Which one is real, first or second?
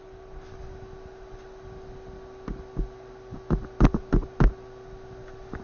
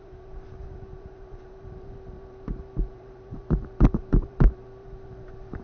first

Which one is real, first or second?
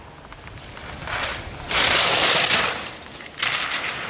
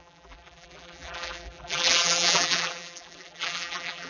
first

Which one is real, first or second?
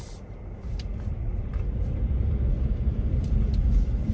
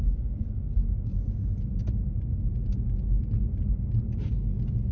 second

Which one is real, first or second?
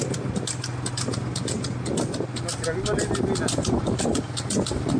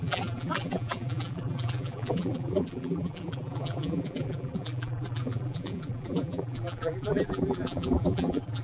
first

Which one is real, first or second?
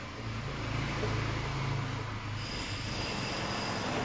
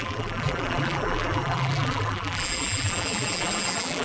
first